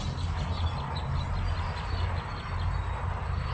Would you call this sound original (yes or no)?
yes